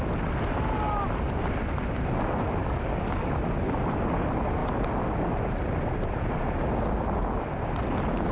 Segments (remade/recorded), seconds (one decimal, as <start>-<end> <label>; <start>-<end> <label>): 0.0-2.6 recorded; 2.6-3.3 remade; 3.3-8.3 recorded